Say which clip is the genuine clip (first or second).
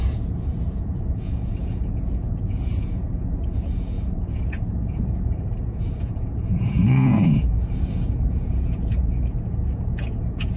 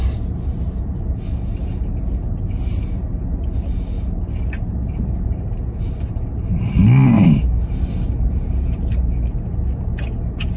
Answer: second